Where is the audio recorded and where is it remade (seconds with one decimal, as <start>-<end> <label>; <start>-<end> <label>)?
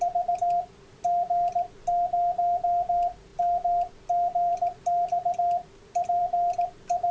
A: 0.0-7.1 recorded